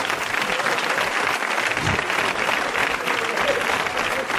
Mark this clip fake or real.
real